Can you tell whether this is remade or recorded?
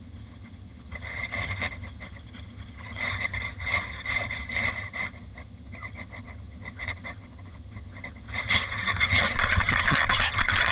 remade